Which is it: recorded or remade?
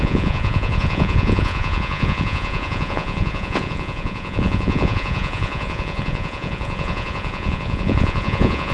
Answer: remade